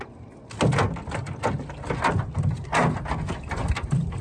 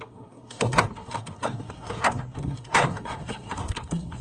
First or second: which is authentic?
first